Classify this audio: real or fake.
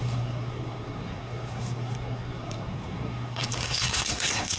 fake